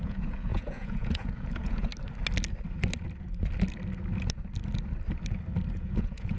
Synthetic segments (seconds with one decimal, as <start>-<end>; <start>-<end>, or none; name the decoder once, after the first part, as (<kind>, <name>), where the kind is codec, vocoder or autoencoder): 0.0-1.9 (vocoder, Vocos); 5.7-6.4